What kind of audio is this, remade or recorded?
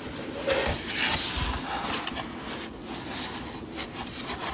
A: recorded